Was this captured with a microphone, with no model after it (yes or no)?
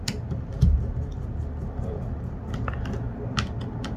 yes